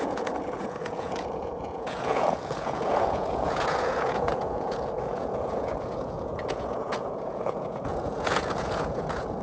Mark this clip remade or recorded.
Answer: remade